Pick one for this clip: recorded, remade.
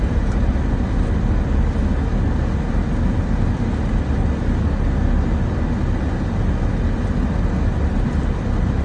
recorded